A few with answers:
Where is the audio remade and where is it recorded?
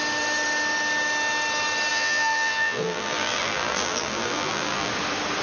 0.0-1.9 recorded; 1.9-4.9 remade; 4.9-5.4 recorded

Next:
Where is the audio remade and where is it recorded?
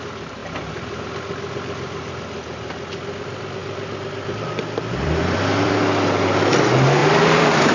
0.0-0.4 recorded; 0.4-1.0 remade; 1.0-3.6 recorded; 3.6-5.7 remade; 5.7-7.0 recorded; 7.0-7.7 remade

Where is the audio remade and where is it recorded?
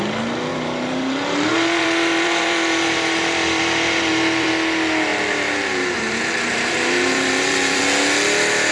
0.0-0.5 recorded; 0.5-4.5 remade; 4.5-5.1 recorded; 5.1-7.8 remade; 7.8-8.7 recorded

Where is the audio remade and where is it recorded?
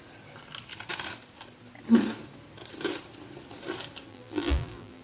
0.0-4.1 recorded; 4.1-5.0 remade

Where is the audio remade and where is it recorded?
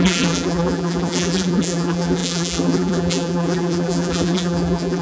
0.0-5.0 remade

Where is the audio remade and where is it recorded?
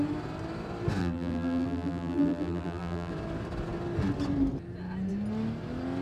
0.0-1.0 recorded; 1.0-3.1 remade; 3.1-6.0 recorded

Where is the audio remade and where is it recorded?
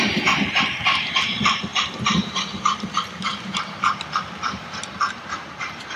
0.0-6.0 remade